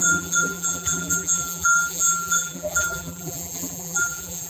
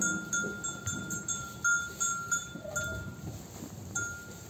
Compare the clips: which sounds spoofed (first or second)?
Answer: first